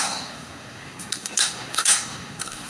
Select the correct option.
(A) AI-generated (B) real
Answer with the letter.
A